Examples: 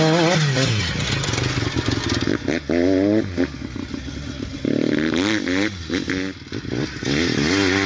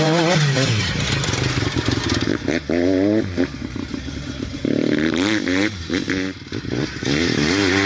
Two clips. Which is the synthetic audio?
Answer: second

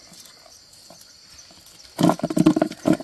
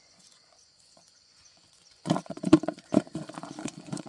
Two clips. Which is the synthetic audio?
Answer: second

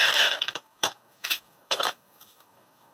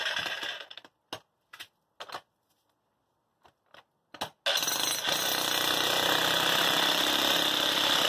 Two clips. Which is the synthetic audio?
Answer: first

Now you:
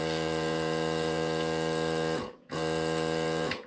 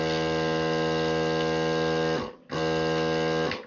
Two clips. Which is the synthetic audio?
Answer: first